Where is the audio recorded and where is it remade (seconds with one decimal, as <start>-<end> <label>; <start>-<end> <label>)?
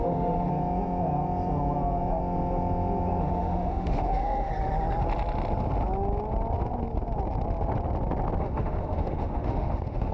0.0-0.5 remade; 0.5-3.2 recorded; 3.2-4.5 remade; 4.5-8.4 recorded; 8.4-10.1 remade